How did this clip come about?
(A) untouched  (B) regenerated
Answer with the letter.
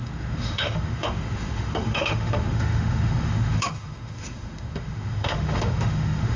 B